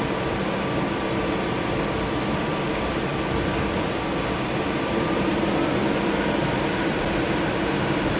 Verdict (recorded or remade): recorded